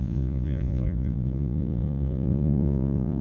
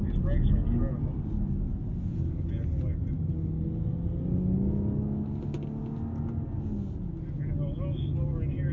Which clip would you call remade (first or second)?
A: first